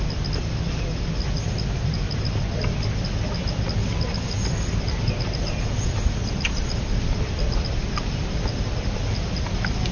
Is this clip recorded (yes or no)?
yes